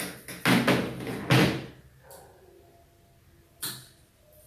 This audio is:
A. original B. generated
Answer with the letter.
A